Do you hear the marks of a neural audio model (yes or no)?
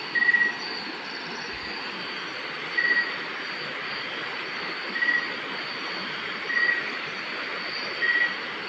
no